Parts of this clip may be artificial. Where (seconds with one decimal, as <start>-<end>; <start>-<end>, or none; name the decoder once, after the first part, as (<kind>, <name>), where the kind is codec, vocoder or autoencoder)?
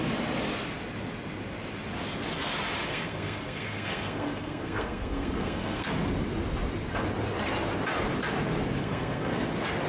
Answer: 2.9-5.9 (codec, SNAC); 8.8-9.5